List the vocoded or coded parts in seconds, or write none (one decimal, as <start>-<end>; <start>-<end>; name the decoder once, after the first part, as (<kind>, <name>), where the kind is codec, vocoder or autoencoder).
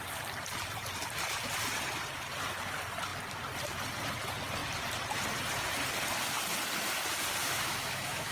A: 7.4-8.3 (autoencoder, DAC-VAE)